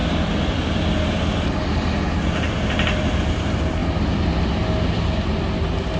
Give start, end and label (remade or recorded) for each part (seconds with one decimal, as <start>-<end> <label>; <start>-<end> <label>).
0.0-6.0 recorded